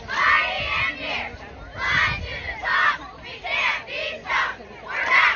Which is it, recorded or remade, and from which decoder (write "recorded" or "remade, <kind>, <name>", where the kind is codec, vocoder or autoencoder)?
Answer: recorded